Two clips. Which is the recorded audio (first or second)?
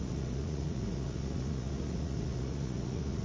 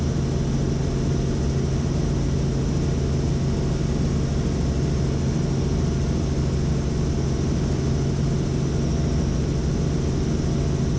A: second